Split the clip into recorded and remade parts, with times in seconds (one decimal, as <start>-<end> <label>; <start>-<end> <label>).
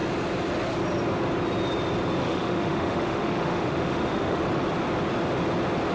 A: 0.0-2.2 recorded; 2.2-4.4 remade; 4.4-5.9 recorded